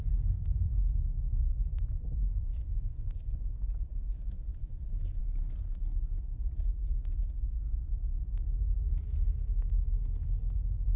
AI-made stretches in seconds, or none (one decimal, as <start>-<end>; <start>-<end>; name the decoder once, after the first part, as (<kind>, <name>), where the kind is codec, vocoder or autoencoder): 1.5-3.9 (vocoder, BigVGAN v2); 4.5-5.2